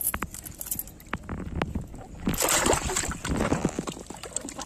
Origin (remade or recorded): recorded